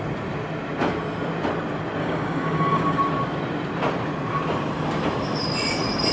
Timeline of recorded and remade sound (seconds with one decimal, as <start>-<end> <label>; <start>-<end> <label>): 0.0-2.0 recorded; 2.0-3.0 remade; 3.0-6.1 recorded